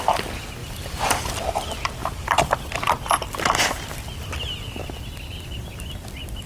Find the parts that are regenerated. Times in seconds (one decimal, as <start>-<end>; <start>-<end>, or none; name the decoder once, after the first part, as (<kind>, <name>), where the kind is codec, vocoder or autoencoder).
0.6-1.3 (vocoder, BigVGAN v2); 2.0-2.7